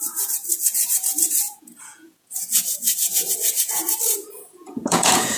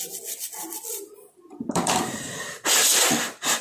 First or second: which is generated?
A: first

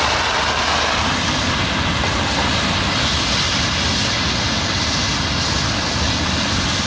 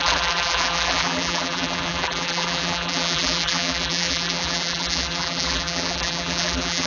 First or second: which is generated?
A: second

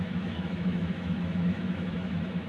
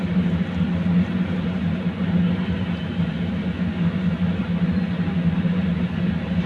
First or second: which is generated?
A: first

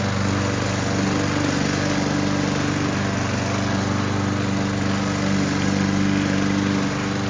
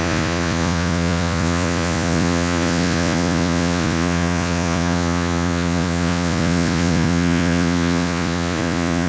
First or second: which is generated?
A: second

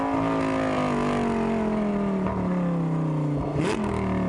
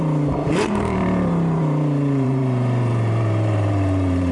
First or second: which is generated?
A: second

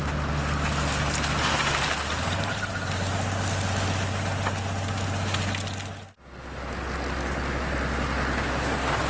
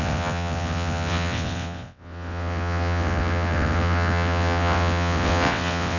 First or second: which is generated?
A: second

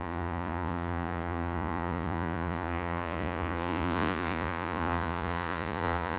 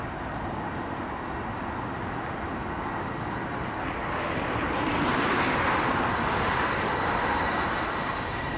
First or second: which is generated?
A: first